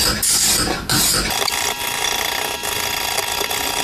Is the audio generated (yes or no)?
no